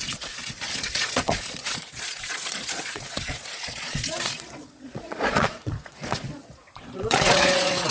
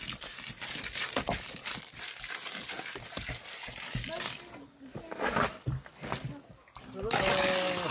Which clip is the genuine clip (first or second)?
second